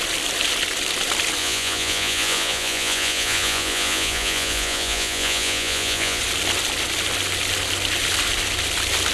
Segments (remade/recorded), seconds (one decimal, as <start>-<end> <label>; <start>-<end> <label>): 0.0-1.4 recorded; 1.4-6.2 remade; 6.2-9.1 recorded